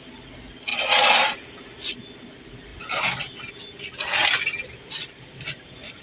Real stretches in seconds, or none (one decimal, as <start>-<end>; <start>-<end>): 0.0-6.0